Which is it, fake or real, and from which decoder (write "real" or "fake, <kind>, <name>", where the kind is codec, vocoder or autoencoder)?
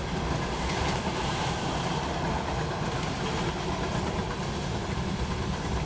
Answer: fake, vocoder, BigVGAN v2